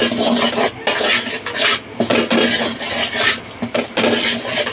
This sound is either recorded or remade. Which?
recorded